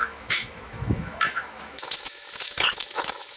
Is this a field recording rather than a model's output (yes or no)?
no